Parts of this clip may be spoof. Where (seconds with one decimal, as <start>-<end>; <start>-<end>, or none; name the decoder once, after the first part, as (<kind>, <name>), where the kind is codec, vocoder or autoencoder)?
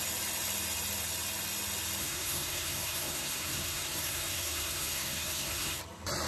2.0-5.8 (codec, SNAC)